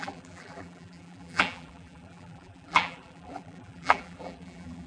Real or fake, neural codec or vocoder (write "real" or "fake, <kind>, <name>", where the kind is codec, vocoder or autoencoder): fake, vocoder, BigVGAN v2